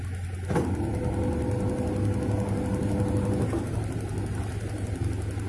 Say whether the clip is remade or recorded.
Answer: recorded